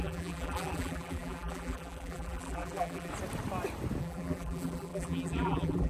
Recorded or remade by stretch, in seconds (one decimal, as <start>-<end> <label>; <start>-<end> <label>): 0.0-3.1 remade; 3.1-4.0 recorded; 4.0-5.9 remade